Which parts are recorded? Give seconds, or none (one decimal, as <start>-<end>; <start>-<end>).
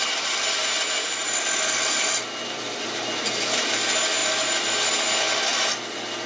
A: 0.0-1.2; 3.1-4.2; 4.9-6.3